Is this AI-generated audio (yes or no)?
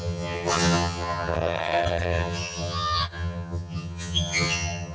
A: yes